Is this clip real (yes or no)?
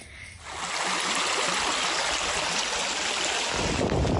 yes